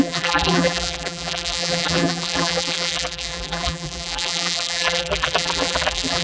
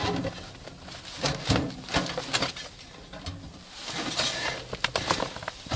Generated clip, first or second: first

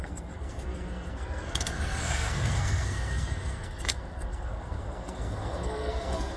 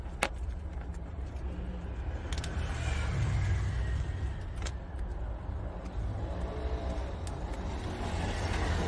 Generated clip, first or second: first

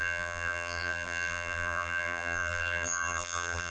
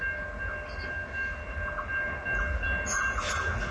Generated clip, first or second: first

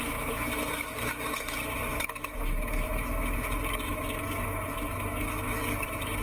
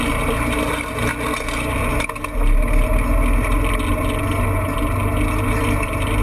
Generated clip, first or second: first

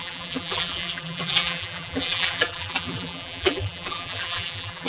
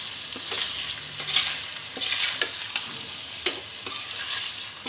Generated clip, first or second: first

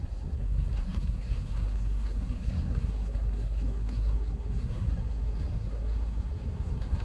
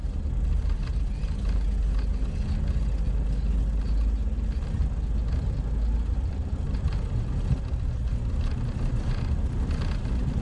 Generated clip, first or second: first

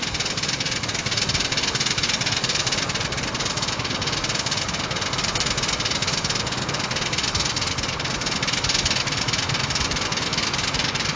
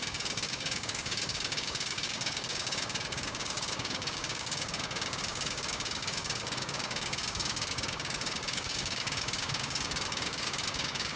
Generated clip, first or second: second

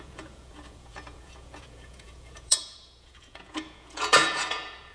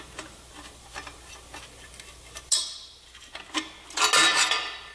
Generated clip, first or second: first